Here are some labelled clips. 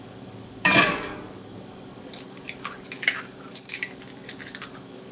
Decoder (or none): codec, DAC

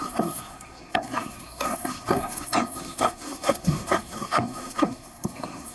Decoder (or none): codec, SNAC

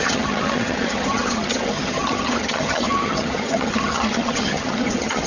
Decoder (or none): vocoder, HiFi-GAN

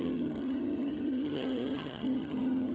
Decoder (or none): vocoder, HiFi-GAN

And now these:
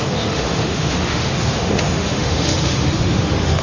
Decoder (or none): autoencoder, DAC-VAE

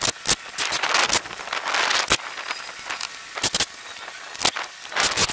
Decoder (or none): none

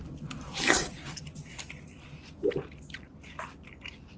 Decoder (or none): vocoder, BigVGAN v2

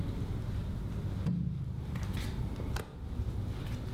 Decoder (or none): none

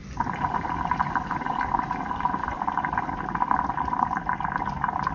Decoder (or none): none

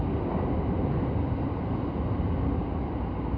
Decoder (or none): none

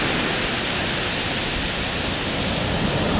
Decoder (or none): none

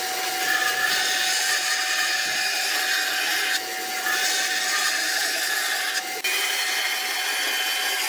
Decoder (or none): none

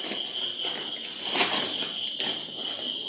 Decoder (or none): none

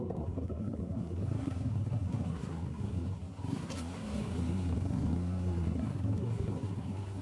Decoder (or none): codec, SNAC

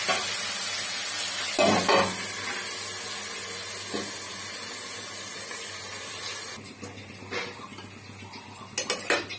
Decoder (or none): none